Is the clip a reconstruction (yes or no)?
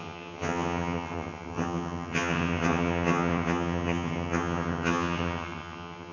yes